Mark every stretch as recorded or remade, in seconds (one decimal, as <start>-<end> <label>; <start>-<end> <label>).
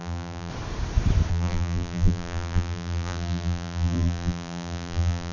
0.0-0.5 remade; 0.5-1.3 recorded; 1.3-5.3 remade